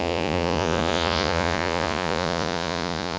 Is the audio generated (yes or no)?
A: yes